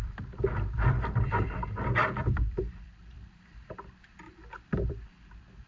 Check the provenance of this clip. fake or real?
fake